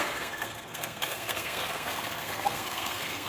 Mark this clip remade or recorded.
remade